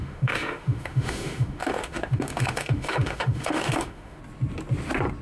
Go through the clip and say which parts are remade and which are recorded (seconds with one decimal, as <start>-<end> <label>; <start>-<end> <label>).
0.0-4.2 remade; 4.2-5.2 recorded